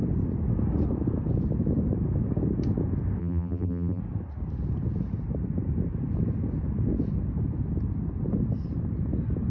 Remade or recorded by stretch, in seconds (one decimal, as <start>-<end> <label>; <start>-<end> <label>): 0.0-3.2 recorded; 3.2-4.0 remade; 4.0-9.5 recorded

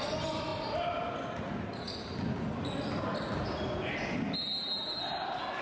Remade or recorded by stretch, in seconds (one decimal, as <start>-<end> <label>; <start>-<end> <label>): 0.0-5.6 recorded

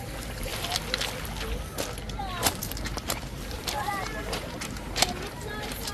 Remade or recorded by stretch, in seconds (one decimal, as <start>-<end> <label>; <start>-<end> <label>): 0.0-0.5 remade; 0.5-2.2 recorded; 2.2-5.9 remade

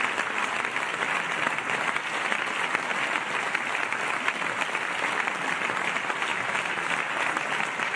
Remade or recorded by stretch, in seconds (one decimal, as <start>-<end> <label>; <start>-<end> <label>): 0.0-6.3 remade; 6.3-7.1 recorded; 7.1-8.0 remade

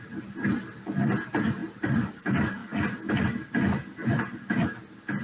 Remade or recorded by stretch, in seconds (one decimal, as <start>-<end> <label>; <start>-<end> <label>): 0.0-1.6 recorded; 1.6-2.2 remade; 2.2-5.2 recorded

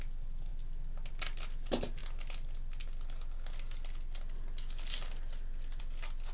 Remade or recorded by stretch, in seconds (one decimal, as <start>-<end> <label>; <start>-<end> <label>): 0.0-6.3 recorded

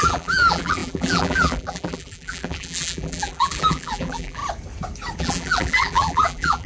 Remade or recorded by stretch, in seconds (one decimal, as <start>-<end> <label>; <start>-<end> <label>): 0.0-4.4 remade; 4.4-5.2 recorded; 5.2-6.7 remade

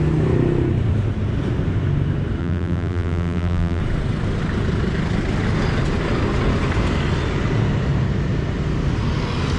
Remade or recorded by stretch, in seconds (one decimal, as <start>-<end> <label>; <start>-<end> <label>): 0.0-2.4 recorded; 2.4-3.8 remade; 3.8-9.6 recorded